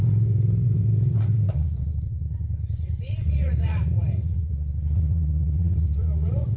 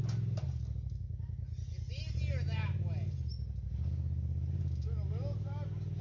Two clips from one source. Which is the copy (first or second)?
first